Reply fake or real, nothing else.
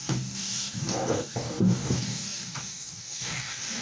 fake